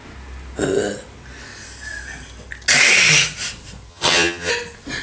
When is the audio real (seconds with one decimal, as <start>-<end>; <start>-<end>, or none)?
0.0-3.9; 4.5-5.0